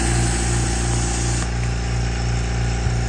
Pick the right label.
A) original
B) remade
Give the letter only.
A